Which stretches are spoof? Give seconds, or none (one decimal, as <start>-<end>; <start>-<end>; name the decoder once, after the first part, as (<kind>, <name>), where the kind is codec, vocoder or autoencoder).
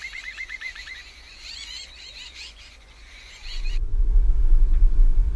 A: 0.0-5.4 (vocoder, Vocos)